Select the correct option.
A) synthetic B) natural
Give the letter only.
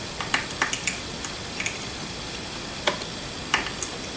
B